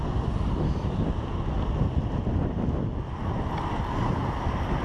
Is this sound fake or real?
real